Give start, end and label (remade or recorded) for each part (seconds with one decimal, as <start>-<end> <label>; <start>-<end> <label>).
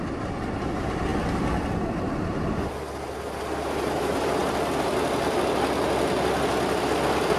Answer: 0.0-7.4 recorded